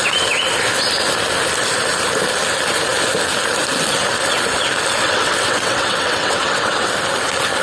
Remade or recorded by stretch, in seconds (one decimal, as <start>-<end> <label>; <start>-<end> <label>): 0.0-5.0 recorded; 5.0-6.9 remade; 6.9-7.6 recorded